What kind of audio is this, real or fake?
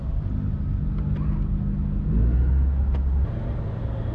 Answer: real